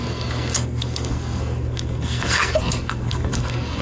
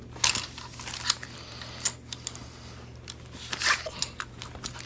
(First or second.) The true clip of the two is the second